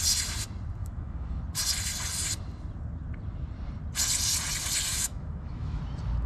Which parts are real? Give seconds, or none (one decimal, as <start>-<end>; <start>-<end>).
0.0-0.8; 1.4-4.9; 5.8-6.3